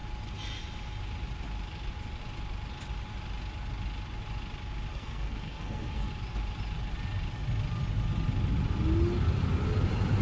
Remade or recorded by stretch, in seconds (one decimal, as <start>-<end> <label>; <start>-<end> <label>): 0.0-4.9 recorded; 4.9-6.1 remade; 6.1-10.2 recorded

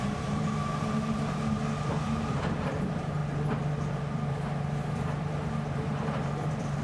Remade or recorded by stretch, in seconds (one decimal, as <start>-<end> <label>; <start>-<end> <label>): 0.0-3.2 remade; 3.2-3.9 recorded; 3.9-6.8 remade